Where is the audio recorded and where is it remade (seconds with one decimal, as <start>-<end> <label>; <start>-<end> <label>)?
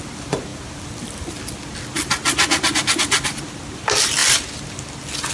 0.0-5.3 recorded